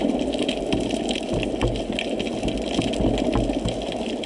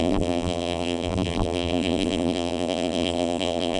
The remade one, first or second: second